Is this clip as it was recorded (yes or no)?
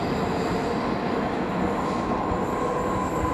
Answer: yes